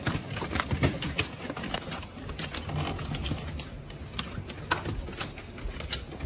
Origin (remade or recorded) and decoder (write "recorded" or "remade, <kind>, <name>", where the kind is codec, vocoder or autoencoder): recorded